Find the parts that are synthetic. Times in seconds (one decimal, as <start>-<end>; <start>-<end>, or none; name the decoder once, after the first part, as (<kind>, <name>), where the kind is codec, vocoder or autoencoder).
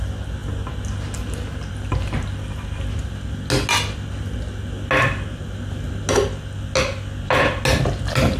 none